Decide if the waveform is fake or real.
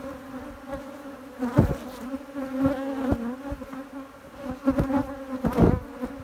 real